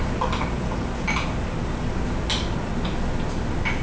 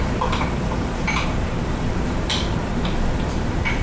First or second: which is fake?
second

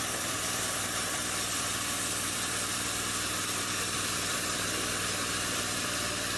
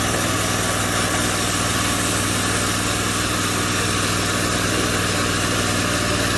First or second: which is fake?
first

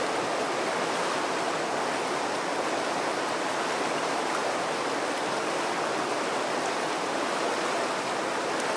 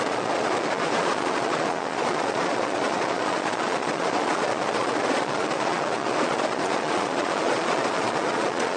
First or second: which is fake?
second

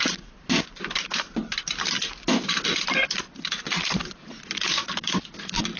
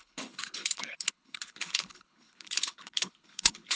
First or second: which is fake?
second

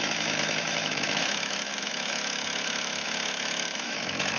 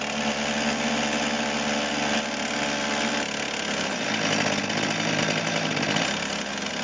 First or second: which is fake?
first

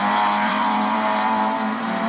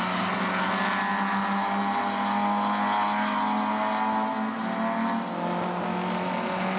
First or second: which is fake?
first